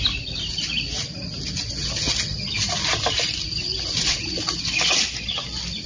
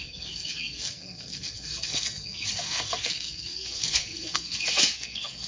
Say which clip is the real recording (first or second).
first